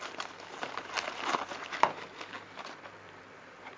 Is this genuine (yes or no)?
yes